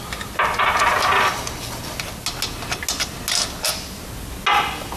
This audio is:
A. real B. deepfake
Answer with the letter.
A